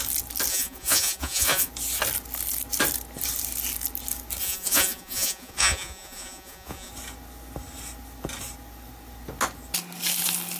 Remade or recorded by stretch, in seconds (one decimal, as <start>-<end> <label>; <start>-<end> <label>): 0.0-0.5 recorded; 0.5-1.7 remade; 1.7-4.4 recorded; 4.4-6.9 remade; 6.9-10.6 recorded